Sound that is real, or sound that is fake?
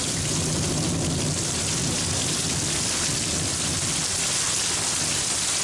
real